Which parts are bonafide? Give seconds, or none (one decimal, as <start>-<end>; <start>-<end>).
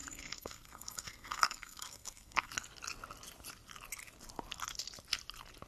2.5-5.7